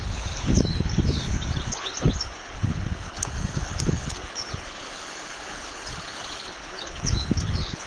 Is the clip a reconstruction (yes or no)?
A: yes